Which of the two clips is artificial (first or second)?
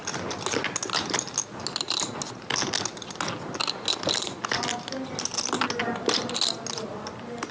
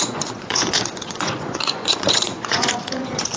second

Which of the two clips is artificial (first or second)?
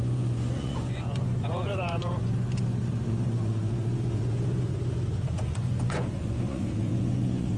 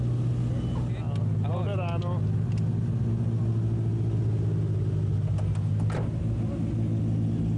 first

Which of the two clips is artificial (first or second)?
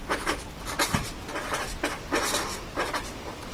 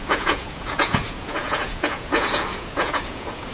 second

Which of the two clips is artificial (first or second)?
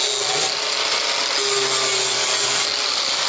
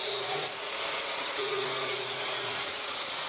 second